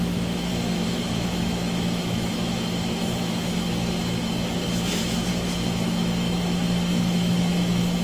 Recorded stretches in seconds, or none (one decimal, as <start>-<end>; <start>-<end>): none